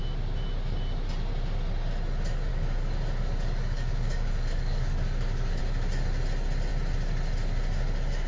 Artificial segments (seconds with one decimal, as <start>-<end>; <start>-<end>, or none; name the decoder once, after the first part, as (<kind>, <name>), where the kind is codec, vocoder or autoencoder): 2.5-5.6 (codec, DAC)